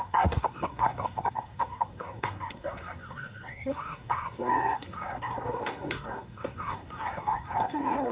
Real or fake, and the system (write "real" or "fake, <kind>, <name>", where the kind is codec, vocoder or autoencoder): fake, codec, SNAC